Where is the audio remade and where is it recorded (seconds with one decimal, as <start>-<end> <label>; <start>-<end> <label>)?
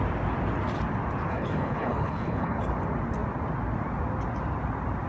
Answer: 0.0-1.3 recorded; 1.3-2.6 remade; 2.6-5.1 recorded